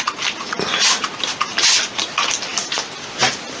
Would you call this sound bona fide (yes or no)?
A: yes